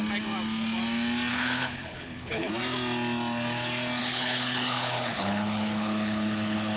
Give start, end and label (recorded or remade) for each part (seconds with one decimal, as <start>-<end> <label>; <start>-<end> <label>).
0.0-1.3 recorded; 1.3-2.5 remade; 2.5-4.0 recorded; 4.0-6.8 remade